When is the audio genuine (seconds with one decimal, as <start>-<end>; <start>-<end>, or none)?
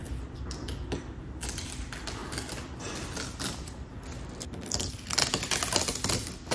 0.0-6.5